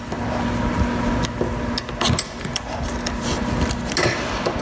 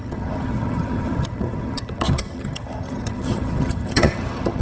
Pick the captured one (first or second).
first